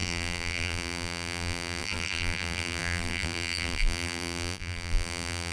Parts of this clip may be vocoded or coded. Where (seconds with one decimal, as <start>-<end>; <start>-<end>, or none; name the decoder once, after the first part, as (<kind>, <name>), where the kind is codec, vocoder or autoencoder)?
0.0-5.5 (vocoder, BigVGAN v2)